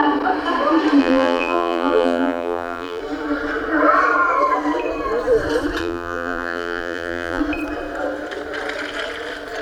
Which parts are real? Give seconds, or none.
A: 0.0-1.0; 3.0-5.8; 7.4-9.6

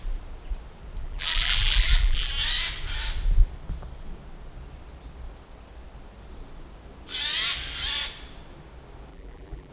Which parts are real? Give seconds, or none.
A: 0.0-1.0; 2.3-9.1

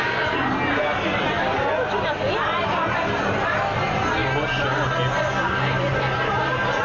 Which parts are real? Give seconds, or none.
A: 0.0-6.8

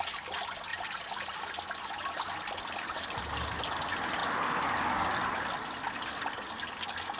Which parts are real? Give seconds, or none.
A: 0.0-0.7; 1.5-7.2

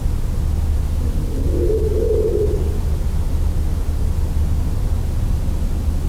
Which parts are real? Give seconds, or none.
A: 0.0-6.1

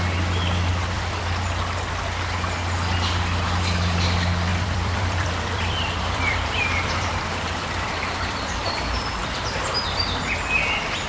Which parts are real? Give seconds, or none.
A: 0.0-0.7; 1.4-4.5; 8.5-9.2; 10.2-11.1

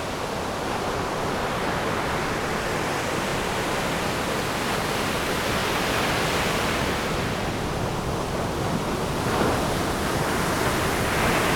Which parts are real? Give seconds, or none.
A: 0.0-11.6

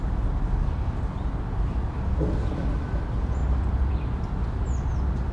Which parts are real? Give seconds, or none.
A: 0.0-5.3